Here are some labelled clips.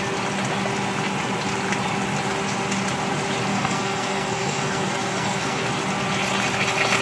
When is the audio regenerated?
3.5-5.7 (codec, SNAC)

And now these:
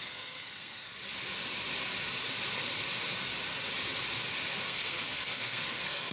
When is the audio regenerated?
0.0-0.9 (codec, SNAC); 4.6-6.1